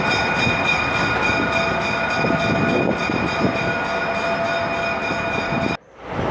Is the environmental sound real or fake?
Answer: real